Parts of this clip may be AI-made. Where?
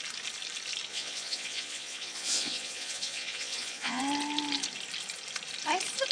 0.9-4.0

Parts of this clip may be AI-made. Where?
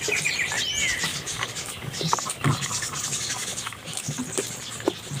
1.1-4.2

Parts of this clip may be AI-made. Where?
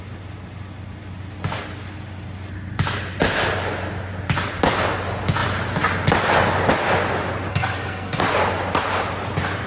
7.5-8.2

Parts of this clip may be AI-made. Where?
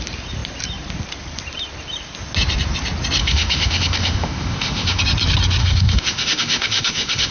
3.2-5.0; 5.6-7.3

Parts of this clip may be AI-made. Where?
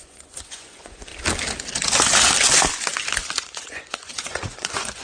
0.0-1.1; 3.4-5.0